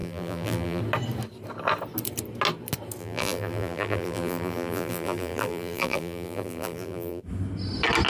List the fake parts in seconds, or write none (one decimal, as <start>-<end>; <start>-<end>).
0.0-0.8; 3.0-7.2